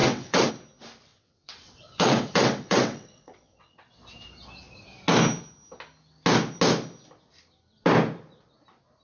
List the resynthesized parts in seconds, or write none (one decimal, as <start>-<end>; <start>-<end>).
0.0-0.5; 1.1-3.9